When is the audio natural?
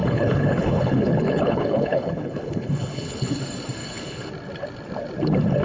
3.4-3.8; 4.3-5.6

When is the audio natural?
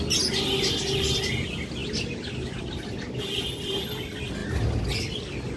0.0-5.6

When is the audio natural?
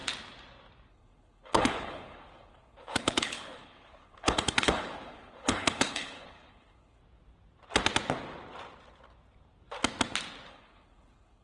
0.0-0.9; 7.0-10.5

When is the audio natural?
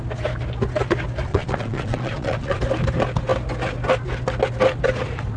0.0-1.3; 2.6-5.4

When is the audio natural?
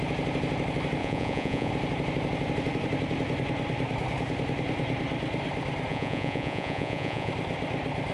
0.0-1.0; 1.7-5.9; 7.3-8.1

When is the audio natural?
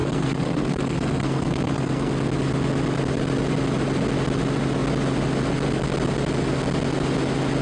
2.1-7.6